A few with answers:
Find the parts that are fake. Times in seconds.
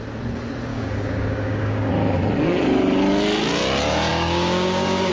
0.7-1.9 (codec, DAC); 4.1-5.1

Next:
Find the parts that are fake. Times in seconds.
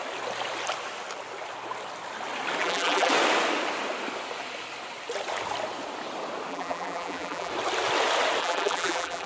2.6-3.1 (vocoder, BigVGAN v2); 6.5-7.5; 8.4-9.3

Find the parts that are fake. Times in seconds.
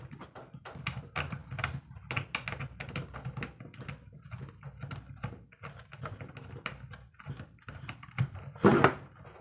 none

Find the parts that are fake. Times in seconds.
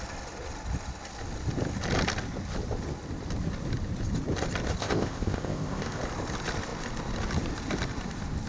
4.8-6.0 (codec, ZipCodec)